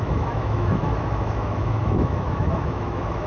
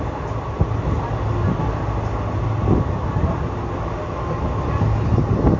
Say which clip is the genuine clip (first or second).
second